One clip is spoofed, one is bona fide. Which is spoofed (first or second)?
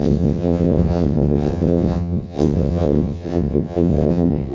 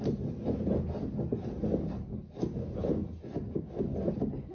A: first